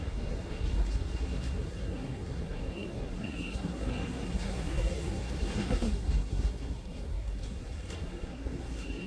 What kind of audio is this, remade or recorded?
remade